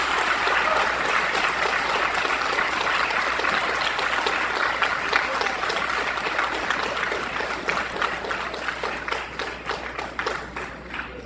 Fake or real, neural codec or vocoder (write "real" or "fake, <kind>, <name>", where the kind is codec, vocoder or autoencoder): real